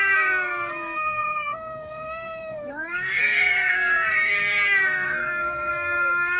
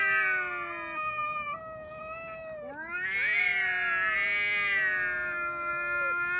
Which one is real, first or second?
second